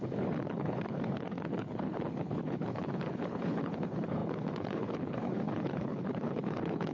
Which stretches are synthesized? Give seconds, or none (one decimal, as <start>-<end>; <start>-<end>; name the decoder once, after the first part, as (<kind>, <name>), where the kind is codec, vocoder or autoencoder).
0.0-6.9 (codec, HILCodec)